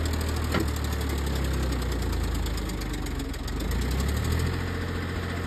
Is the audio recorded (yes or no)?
yes